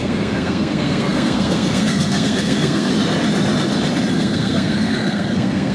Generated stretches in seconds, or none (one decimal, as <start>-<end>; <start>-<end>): 0.0-2.9; 4.1-5.7